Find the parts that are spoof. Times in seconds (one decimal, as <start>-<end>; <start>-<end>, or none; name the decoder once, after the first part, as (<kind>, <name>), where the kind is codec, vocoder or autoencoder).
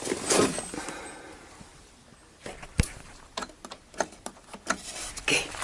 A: none